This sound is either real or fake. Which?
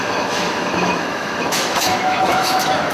fake